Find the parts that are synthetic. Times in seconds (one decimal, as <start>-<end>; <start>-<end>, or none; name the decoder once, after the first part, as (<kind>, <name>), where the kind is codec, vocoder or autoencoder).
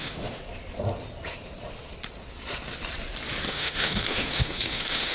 0.0-0.4 (autoencoder, DAC-VAE); 3.5-5.1